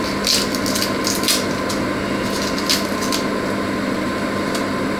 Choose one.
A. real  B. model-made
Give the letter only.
A